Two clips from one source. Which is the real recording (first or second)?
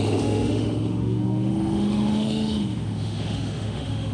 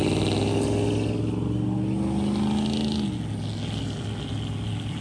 second